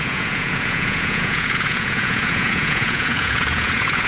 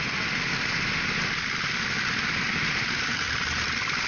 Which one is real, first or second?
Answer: second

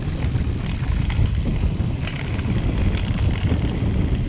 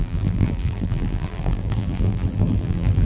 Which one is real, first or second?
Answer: first